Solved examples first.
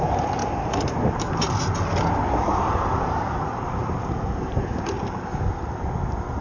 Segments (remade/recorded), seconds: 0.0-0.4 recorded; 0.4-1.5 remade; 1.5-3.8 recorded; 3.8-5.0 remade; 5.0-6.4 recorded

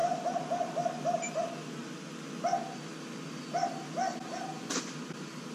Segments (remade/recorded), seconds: 0.0-1.4 remade; 1.4-5.5 recorded

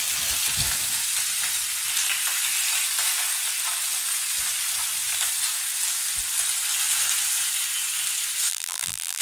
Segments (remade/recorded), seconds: 0.0-8.5 recorded; 8.5-9.2 remade

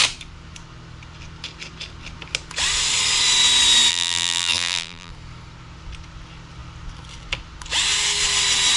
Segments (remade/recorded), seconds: 0.0-3.9 recorded; 3.9-5.1 remade; 5.1-8.8 recorded